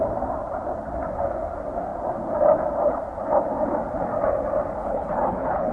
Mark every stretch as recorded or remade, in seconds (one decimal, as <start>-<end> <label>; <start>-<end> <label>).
0.0-4.8 recorded; 4.8-5.7 remade